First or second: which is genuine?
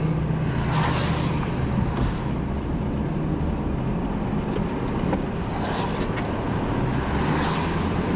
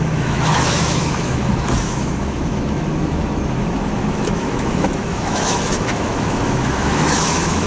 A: first